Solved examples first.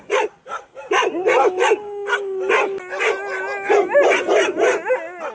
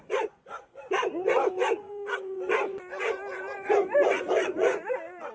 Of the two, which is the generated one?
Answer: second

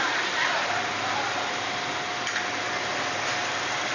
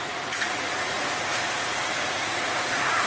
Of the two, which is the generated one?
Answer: second